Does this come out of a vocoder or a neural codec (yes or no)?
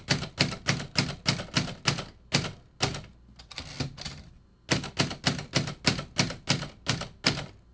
no